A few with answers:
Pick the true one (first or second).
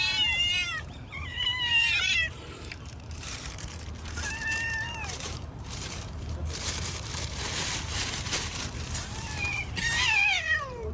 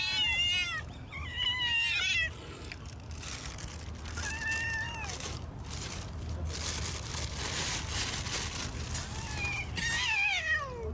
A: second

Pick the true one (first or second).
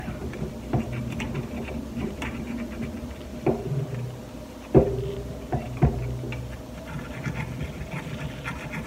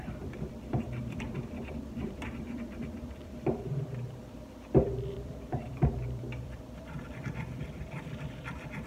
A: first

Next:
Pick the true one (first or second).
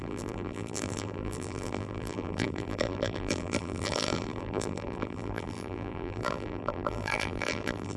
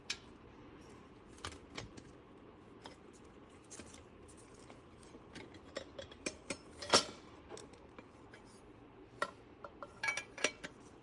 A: second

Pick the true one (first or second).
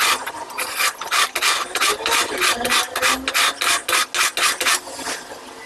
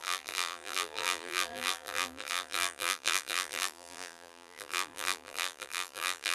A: first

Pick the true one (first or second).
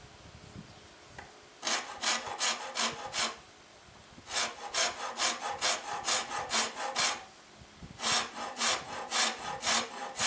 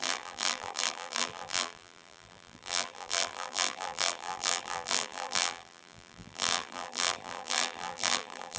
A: first